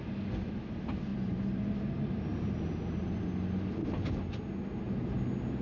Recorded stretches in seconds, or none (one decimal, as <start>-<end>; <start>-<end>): 0.0-5.6